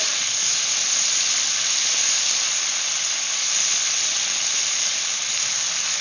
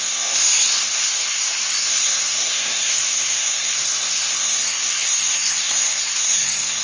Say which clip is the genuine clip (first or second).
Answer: first